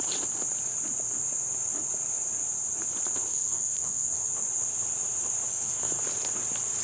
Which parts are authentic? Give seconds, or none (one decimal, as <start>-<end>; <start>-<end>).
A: 0.0-3.3; 4.3-5.5; 6.0-6.8